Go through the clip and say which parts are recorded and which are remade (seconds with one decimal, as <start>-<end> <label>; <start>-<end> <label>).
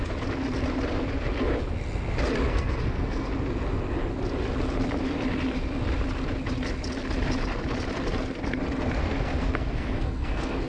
0.0-2.5 recorded; 2.5-3.3 remade; 3.3-9.0 recorded; 9.0-10.7 remade